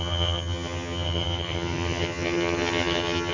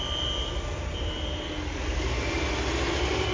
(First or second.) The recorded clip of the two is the second